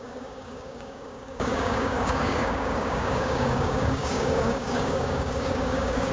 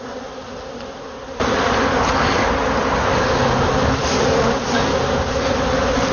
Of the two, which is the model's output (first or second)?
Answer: first